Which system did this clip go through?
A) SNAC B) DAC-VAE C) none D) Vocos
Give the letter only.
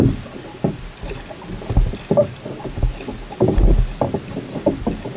C